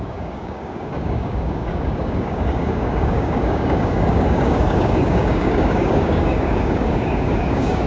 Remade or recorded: remade